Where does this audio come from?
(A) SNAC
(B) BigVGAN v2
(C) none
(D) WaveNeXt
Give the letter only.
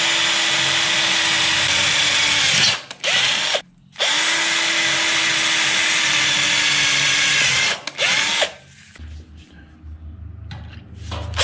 C